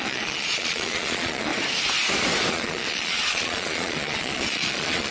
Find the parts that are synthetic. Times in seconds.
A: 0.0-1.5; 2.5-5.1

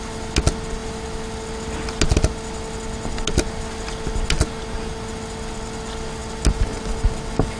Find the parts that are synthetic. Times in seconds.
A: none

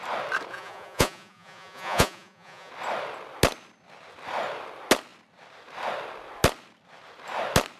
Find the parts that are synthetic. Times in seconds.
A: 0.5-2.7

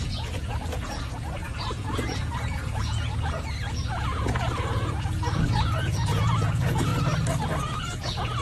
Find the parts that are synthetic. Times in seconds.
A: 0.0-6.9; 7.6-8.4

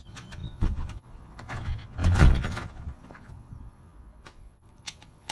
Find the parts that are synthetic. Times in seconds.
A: 0.0-5.3

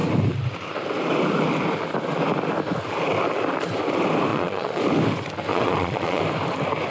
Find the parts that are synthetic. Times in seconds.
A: 4.3-4.8; 5.5-6.2

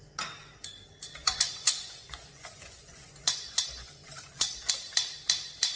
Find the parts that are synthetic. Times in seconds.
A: 1.2-4.7